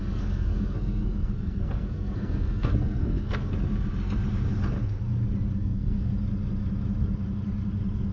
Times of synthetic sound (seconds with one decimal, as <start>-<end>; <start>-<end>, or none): 0.0-3.5; 5.6-6.1